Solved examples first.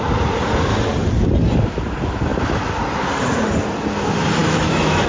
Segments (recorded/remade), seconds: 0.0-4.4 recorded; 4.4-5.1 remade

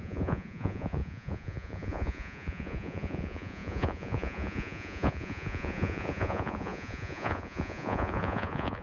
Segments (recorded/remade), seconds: 0.0-8.8 remade

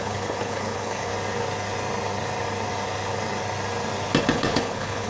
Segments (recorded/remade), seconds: 0.0-1.1 remade; 1.1-4.2 recorded; 4.2-5.1 remade

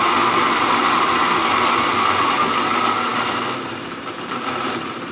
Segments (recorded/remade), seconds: 0.0-3.1 recorded; 3.1-5.1 remade

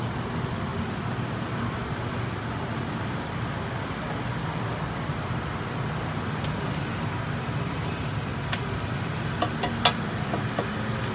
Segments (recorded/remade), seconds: 0.0-11.1 recorded